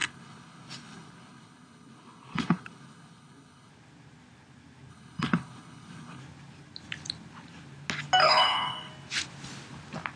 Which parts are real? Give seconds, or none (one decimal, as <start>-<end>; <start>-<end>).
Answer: 3.7-4.9; 6.2-8.2; 8.9-10.2